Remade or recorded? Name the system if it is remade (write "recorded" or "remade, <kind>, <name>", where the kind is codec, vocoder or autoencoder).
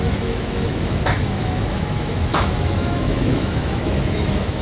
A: remade, autoencoder, DAC-VAE